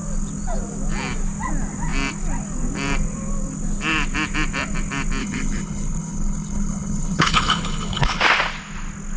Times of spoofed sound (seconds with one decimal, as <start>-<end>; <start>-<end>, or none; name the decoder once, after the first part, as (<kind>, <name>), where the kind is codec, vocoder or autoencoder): 5.2-8.2 (codec, HILCodec)